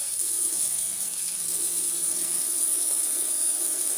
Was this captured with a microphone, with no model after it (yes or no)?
no